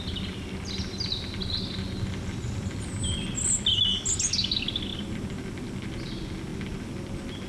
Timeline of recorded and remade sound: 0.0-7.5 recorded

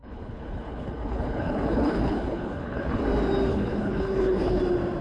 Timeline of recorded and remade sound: 0.0-3.0 remade; 3.0-3.5 recorded; 3.5-4.6 remade; 4.6-5.0 recorded